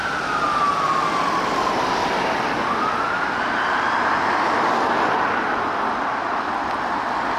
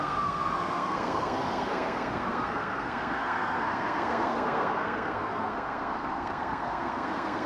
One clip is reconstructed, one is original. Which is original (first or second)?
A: first